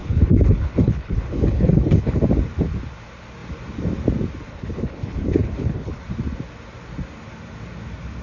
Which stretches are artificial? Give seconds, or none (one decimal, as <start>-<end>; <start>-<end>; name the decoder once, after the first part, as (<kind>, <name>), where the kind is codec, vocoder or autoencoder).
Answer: 0.0-2.2 (codec, HILCodec); 4.5-6.0